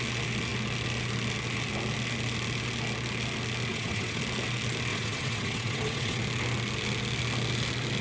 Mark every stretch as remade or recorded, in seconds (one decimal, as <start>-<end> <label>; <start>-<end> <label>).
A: 0.0-3.7 recorded; 3.7-4.2 remade; 4.2-4.9 recorded; 4.9-6.2 remade; 6.2-8.0 recorded

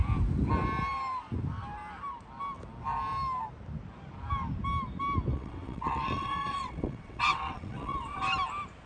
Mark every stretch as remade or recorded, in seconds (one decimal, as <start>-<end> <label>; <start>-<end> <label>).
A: 0.0-5.3 recorded; 5.3-8.2 remade; 8.2-8.9 recorded

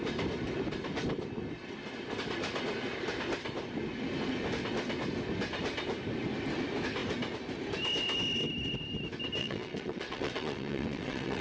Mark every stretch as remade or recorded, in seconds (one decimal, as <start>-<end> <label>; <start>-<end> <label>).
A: 0.0-9.4 recorded; 9.4-11.4 remade

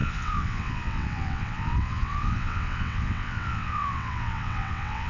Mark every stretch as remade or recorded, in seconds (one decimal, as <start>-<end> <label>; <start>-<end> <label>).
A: 0.0-5.1 remade